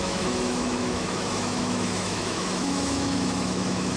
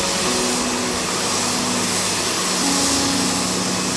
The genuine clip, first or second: second